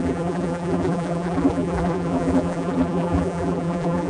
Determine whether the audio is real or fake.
fake